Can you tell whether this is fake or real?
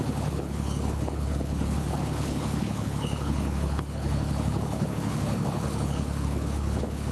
fake